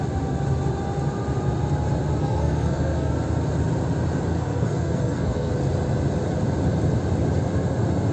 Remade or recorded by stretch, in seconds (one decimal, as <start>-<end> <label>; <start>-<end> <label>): 0.0-2.2 recorded; 2.2-3.1 remade; 3.1-4.3 recorded; 4.3-5.5 remade; 5.5-8.1 recorded